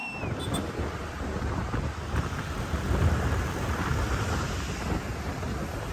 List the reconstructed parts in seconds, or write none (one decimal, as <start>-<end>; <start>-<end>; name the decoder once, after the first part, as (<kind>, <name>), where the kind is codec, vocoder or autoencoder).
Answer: none